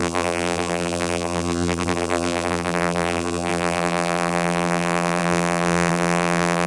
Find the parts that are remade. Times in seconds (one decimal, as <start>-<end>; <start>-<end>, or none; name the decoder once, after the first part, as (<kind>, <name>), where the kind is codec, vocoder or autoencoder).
0.0-6.7 (vocoder, BigVGAN v2)